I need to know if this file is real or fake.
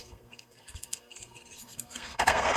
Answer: fake